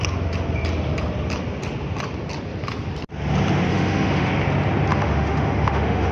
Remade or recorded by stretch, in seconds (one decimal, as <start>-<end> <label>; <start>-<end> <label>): 0.0-3.7 recorded; 3.7-4.3 remade; 4.3-4.9 recorded; 4.9-6.1 remade